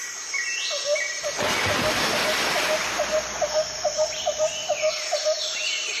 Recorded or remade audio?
recorded